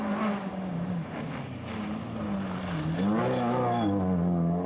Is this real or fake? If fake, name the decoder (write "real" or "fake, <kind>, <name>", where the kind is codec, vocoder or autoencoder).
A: real